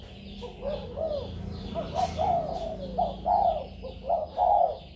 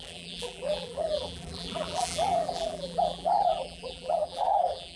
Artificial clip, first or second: second